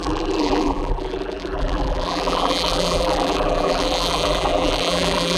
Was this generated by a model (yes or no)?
yes